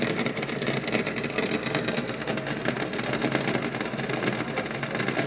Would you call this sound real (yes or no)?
yes